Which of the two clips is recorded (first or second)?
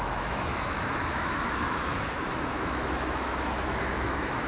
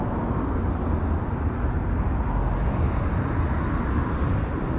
second